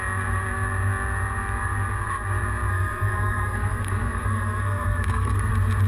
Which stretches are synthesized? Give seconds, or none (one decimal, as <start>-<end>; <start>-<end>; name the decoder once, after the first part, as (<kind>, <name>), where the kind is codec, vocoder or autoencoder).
2.7-5.5 (codec, SNAC)